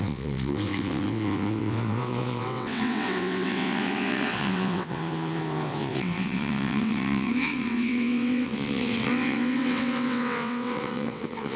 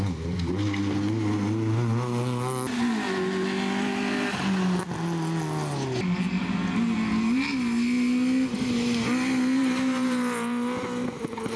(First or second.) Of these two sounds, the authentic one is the second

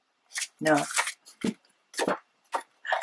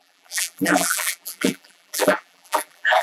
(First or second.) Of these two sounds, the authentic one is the first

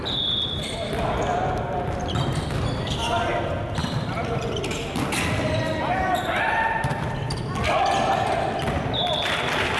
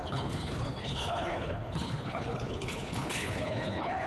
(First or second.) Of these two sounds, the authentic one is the first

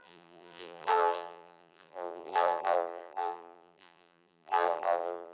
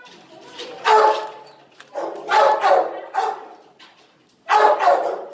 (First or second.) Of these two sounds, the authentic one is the second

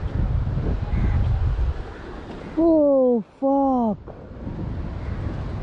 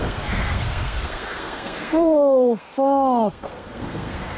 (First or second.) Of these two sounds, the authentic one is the first